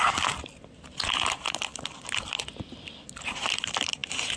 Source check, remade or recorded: remade